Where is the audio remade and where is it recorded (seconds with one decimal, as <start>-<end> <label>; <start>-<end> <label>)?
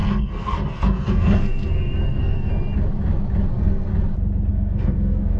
0.0-2.5 remade; 2.5-3.5 recorded; 3.5-3.9 remade; 3.9-4.5 recorded; 4.5-5.4 remade